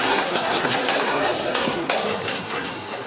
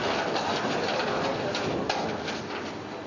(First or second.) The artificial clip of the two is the first